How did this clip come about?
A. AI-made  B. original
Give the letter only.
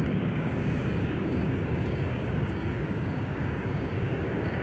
A